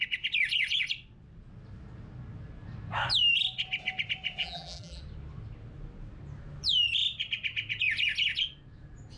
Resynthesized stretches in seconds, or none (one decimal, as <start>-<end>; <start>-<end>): 4.4-5.0